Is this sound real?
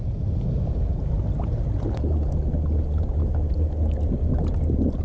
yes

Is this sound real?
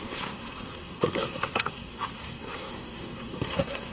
no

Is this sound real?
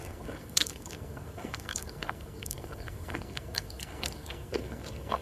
no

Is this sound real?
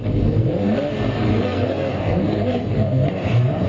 no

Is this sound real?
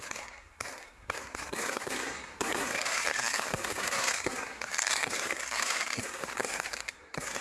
no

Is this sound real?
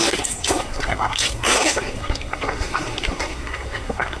no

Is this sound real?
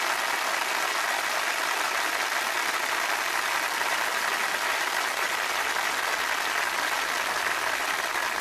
yes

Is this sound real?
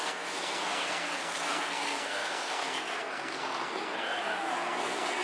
no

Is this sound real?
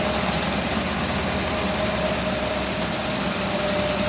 yes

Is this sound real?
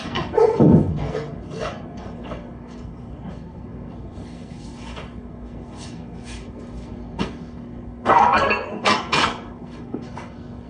no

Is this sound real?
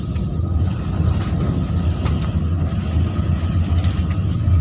yes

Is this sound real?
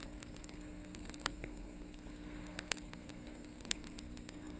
no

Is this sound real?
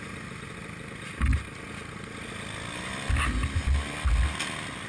yes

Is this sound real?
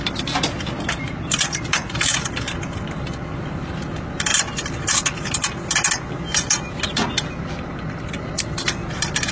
yes